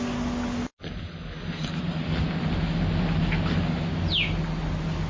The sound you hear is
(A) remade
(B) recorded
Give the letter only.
B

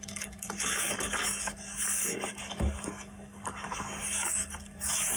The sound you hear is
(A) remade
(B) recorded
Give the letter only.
A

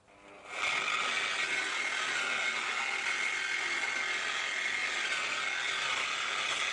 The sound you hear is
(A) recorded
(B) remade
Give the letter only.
A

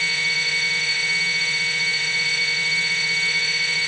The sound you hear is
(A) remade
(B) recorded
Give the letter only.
A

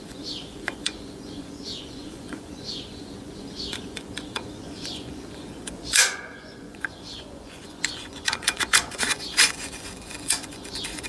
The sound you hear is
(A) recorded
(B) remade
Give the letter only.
B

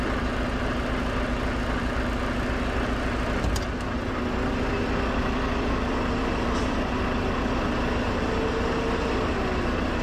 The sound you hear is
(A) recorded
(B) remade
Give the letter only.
A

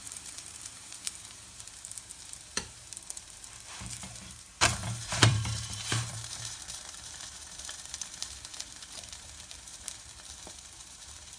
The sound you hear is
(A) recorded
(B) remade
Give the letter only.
B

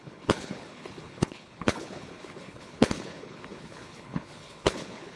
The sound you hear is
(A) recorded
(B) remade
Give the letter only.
B